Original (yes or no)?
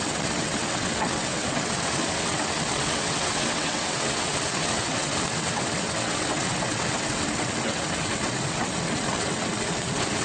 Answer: no